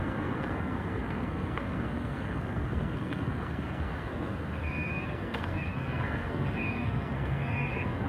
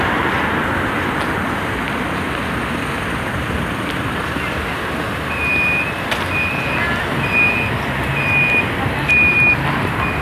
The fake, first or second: first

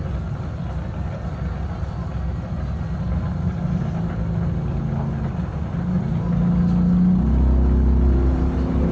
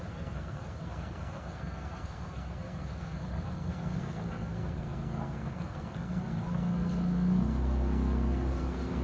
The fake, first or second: second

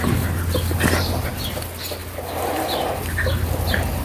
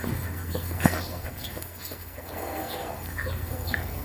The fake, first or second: second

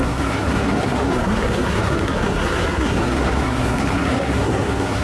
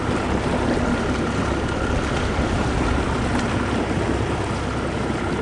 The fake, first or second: first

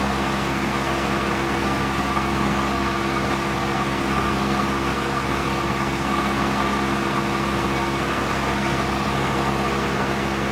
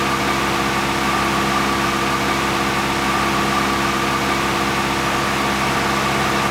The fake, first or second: first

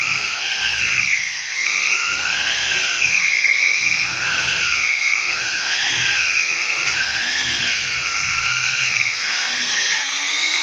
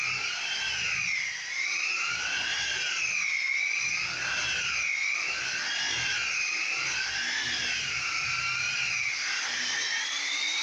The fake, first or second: first